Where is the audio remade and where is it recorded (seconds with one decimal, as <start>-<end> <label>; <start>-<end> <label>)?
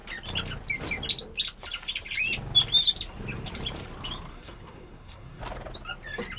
0.0-4.3 recorded; 4.3-5.4 remade; 5.4-6.4 recorded